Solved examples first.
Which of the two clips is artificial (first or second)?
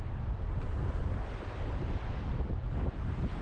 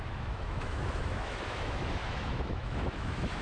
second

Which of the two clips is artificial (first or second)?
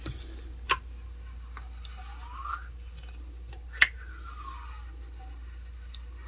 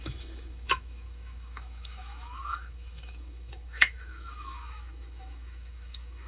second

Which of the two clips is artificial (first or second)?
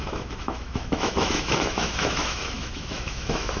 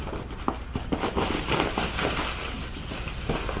first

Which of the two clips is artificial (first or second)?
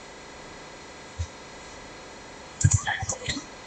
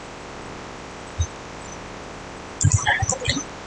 first